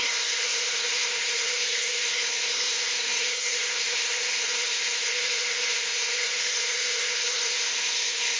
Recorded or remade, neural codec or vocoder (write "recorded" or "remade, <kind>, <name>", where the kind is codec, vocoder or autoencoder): remade, codec, SNAC